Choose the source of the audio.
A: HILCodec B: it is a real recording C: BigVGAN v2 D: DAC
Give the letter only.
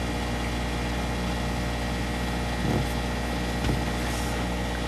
B